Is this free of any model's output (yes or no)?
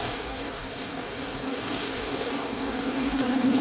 no